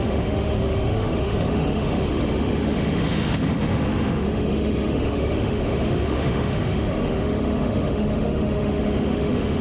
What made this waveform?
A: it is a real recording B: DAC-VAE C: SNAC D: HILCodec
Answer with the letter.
B